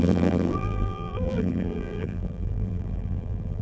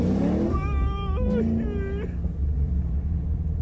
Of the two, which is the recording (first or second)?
second